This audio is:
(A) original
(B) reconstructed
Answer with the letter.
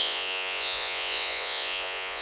B